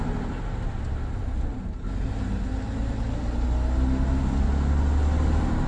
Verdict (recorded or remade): recorded